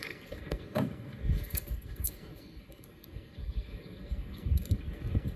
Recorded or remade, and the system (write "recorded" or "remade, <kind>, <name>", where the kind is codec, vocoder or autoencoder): remade, codec, SNAC